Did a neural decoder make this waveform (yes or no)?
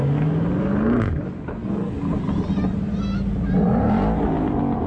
no